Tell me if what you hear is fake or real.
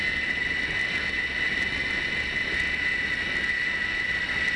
real